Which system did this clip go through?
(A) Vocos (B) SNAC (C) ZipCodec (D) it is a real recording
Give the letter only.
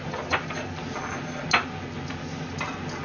D